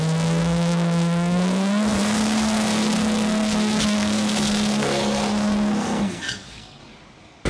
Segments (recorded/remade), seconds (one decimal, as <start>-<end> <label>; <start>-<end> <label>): 0.0-6.8 remade; 6.8-7.5 recorded